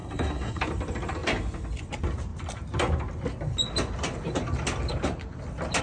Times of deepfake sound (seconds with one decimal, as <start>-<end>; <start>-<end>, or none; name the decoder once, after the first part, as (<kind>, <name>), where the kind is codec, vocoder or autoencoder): 0.0-0.6 (codec, SNAC)